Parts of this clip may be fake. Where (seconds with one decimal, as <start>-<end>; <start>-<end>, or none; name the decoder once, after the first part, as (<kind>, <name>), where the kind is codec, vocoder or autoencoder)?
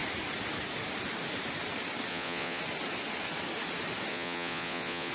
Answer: 2.1-2.6 (vocoder, Vocos); 4.1-5.1